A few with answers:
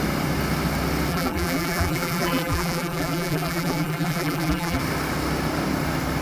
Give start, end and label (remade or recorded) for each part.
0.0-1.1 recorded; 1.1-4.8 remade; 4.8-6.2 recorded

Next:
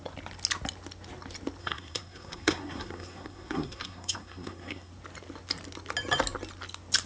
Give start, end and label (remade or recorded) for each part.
0.0-1.6 recorded; 1.6-4.9 remade; 4.9-7.1 recorded

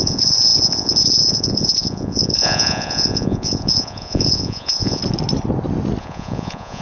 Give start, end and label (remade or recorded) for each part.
0.0-5.0 remade; 5.0-6.0 recorded; 6.0-6.8 remade

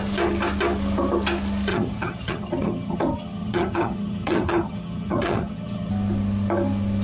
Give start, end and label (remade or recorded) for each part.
0.0-1.7 recorded; 1.7-5.9 remade; 5.9-7.0 recorded